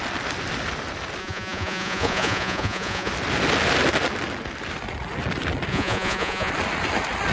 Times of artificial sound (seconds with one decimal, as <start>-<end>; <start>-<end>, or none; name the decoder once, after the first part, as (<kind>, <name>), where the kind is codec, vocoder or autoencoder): 1.2-3.1 (vocoder, Vocos); 5.7-6.5